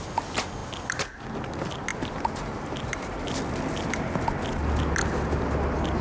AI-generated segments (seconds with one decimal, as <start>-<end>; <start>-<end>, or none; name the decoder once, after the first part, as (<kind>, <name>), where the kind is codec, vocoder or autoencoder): 0.6-1.2 (vocoder, BigVGAN v2); 1.9-3.4; 5.0-6.0